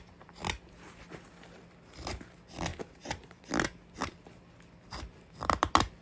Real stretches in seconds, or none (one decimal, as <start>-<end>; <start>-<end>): 0.0-2.7; 3.5-6.0

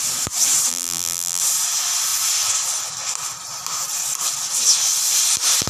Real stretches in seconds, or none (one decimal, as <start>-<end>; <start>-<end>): 0.0-0.7; 1.4-5.7